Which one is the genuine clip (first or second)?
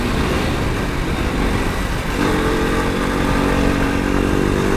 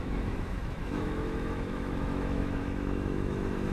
first